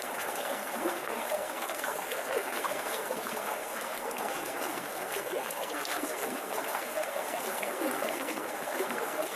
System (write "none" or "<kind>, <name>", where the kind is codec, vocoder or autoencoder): codec, SNAC